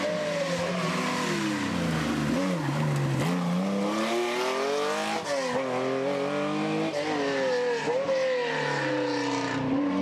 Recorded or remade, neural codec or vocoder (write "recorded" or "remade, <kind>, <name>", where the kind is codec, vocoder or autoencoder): recorded